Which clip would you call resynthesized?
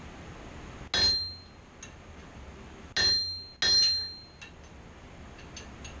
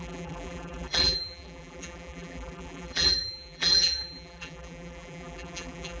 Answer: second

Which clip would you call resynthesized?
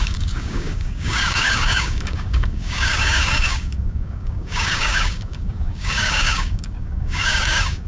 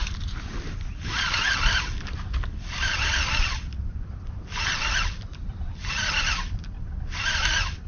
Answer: first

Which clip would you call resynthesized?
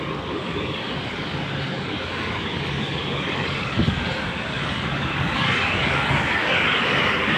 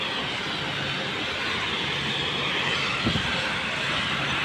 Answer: first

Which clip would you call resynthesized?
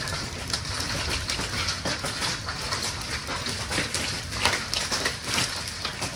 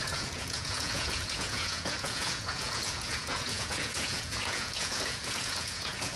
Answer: second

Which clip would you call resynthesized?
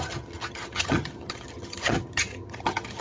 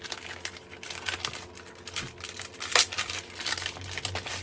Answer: first